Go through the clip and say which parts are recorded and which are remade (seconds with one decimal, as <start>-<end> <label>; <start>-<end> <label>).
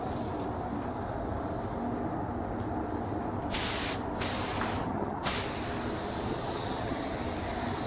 0.0-4.8 recorded; 4.8-5.3 remade; 5.3-6.3 recorded; 6.3-7.2 remade; 7.2-7.9 recorded